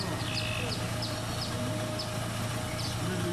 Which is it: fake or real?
real